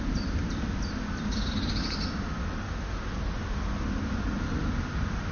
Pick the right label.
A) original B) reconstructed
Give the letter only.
A